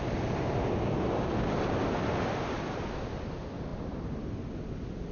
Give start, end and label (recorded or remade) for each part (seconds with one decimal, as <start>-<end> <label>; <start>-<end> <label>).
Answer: 0.0-5.1 recorded